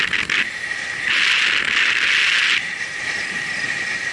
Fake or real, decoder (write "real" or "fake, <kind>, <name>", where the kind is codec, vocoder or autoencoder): real